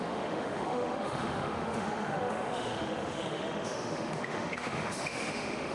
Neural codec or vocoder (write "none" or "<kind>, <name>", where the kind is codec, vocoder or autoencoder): autoencoder, DAC-VAE